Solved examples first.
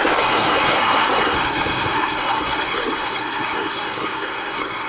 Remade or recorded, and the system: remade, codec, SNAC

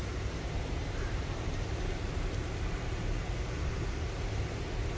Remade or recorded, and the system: remade, vocoder, BigVGAN v2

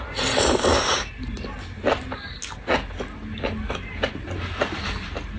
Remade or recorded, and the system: recorded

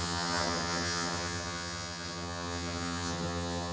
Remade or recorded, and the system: remade, vocoder, HiFi-GAN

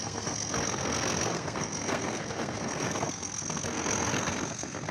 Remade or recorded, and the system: remade, codec, SNAC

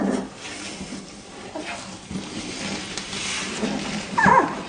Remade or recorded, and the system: remade, vocoder, BigVGAN v2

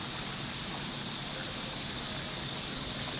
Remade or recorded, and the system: recorded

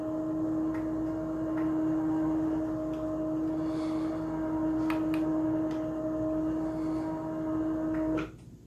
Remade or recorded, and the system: recorded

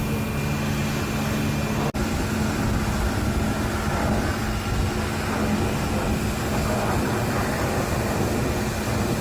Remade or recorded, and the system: recorded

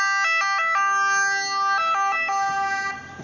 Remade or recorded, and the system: recorded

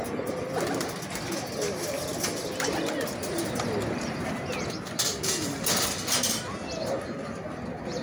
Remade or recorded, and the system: recorded